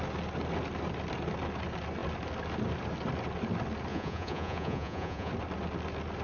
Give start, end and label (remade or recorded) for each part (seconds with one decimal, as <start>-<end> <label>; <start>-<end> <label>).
0.0-3.9 recorded; 3.9-5.3 remade; 5.3-6.2 recorded